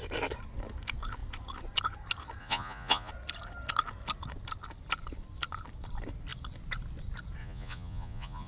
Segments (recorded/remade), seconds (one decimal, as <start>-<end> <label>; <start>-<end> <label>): 0.0-2.4 recorded; 2.4-3.1 remade; 3.1-7.4 recorded; 7.4-8.5 remade